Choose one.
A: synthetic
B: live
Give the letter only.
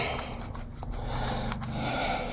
B